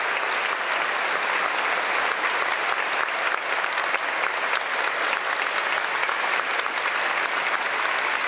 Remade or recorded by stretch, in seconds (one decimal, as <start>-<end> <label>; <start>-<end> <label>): 0.0-6.0 recorded; 6.0-6.5 remade; 6.5-8.3 recorded